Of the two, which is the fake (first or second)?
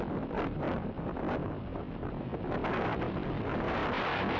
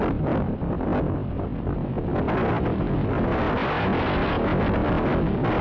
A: first